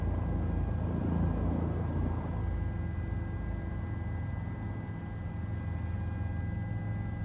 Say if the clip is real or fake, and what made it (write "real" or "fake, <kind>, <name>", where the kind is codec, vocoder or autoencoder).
real